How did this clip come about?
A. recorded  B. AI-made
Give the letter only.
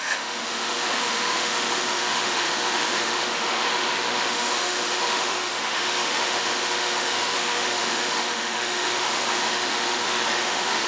B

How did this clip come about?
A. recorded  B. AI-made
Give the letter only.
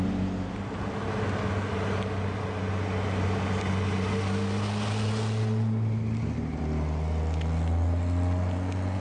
A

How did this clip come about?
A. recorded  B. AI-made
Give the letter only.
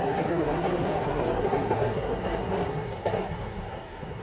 B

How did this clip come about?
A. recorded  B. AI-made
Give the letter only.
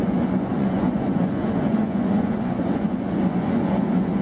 B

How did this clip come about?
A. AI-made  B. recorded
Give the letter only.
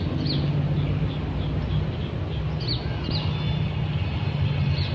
B